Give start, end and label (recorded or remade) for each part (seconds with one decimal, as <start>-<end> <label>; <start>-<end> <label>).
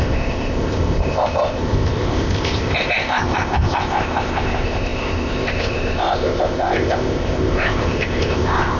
0.0-8.8 remade